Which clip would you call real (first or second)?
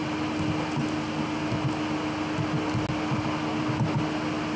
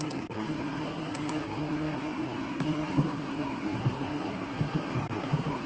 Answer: first